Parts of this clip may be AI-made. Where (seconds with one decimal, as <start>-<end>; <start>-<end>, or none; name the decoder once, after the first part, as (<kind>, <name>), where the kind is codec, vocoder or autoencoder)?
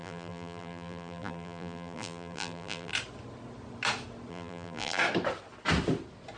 0.0-2.9 (vocoder, BigVGAN v2); 4.3-5.0